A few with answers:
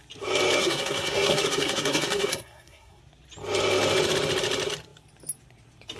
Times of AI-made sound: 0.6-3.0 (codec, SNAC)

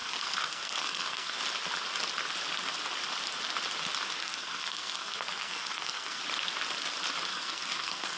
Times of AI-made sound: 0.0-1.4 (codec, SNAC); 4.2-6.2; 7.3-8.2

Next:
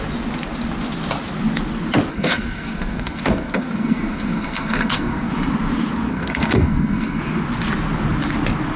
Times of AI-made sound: 2.1-5.3 (codec, SNAC); 6.1-7.2

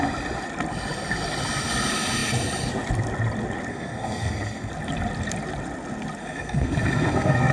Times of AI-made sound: 3.7-4.7 (codec, SNAC); 6.2-7.5

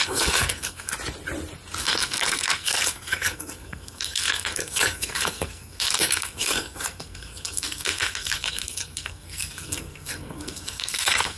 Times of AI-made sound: 0.0-0.9 (codec, SNAC); 1.8-11.4

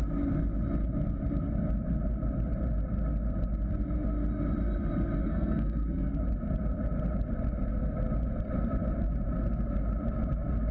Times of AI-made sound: 5.2-6.2 (codec, SNAC)